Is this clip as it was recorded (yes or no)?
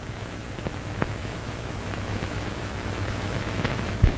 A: no